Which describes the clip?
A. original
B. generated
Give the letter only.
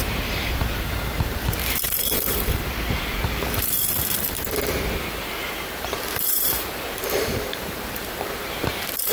B